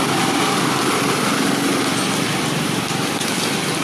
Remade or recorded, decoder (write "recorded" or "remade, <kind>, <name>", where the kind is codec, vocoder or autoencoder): recorded